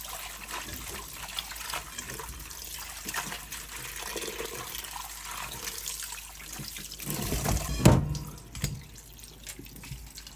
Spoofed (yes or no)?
no